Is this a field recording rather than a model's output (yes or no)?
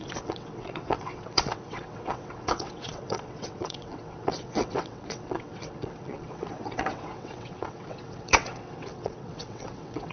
no